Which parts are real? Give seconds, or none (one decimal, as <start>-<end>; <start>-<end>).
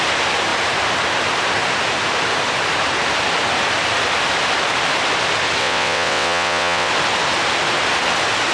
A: 0.0-5.6; 6.9-8.5